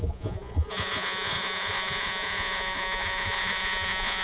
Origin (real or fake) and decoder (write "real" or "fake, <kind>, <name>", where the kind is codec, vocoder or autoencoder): fake, vocoder, Vocos